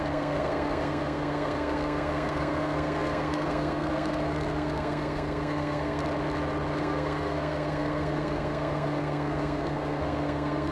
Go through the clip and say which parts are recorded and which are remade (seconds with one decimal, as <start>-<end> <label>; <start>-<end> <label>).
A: 0.0-6.0 remade; 6.0-6.8 recorded; 6.8-10.7 remade